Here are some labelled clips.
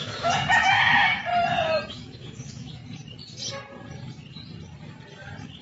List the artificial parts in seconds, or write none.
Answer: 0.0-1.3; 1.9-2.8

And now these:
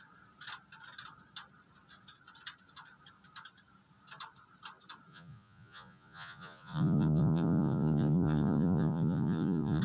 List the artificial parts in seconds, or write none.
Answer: 5.1-9.8

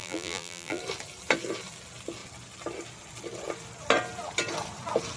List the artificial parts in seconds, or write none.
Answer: 0.0-0.8

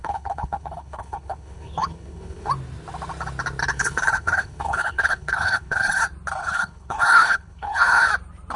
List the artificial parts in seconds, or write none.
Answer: 0.0-2.5; 3.6-6.0; 6.4-8.1

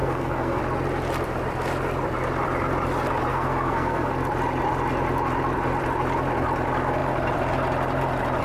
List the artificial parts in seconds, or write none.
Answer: 0.0-0.6; 3.3-4.1